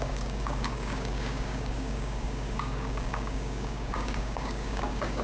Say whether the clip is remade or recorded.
remade